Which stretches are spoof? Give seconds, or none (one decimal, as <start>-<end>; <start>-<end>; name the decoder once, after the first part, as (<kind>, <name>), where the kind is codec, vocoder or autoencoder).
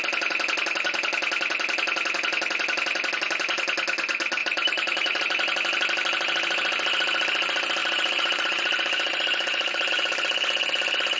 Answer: 4.4-5.2 (vocoder, BigVGAN v2); 7.8-9.9